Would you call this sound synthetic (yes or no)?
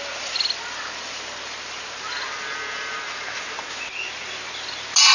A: no